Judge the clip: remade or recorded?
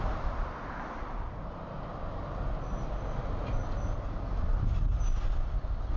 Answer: recorded